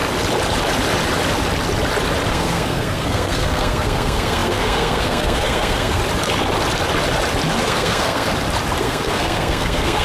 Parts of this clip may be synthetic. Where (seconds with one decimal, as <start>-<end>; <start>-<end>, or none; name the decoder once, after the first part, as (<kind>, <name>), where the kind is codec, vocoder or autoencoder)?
2.3-6.0 (codec, SNAC); 7.6-8.3; 8.8-10.0

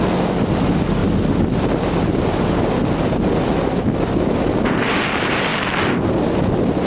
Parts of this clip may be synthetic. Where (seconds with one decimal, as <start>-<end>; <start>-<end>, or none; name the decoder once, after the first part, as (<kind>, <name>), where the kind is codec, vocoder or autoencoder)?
none

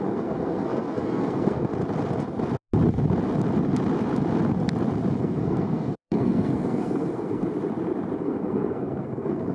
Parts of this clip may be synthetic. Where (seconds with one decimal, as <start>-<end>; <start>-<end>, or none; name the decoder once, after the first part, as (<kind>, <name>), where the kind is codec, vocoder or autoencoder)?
0.0-1.7 (codec, SNAC); 5.2-7.5; 8.2-9.5

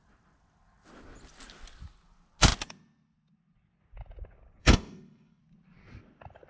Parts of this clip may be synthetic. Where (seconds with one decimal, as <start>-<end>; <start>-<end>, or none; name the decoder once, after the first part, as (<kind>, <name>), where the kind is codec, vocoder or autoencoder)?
4.6-5.4 (codec, SNAC)

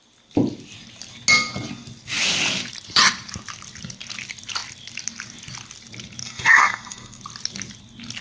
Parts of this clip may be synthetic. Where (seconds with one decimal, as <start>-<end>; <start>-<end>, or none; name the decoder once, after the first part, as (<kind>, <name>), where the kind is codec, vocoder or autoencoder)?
6.2-7.2 (codec, SNAC)

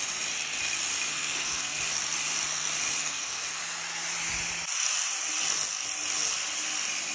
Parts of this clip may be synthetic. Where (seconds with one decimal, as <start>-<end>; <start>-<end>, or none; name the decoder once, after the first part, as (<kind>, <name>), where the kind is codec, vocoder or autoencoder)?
1.1-1.8 (codec, SNAC); 3.0-3.6

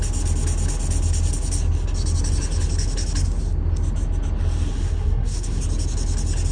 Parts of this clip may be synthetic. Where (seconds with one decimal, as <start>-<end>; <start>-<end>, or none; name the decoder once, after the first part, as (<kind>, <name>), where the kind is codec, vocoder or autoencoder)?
4.7-5.6 (codec, SNAC)